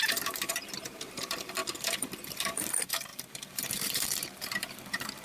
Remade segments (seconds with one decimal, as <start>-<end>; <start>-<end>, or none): 0.0-5.2